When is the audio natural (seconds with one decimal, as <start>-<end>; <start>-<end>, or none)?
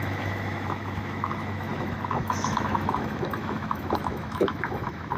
none